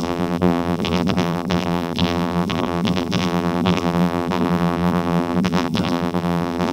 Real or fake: fake